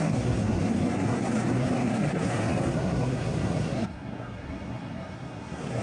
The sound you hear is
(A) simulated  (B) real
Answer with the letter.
A